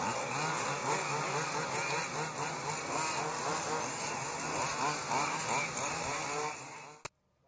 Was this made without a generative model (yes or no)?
yes